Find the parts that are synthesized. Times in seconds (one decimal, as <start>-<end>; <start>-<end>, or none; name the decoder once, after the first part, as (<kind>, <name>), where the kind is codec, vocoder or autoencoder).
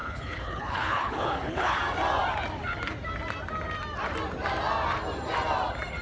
0.0-1.8 (codec, HILCodec)